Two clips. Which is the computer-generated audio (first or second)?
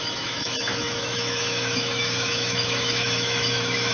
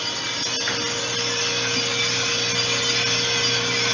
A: first